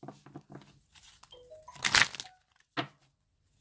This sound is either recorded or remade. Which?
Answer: recorded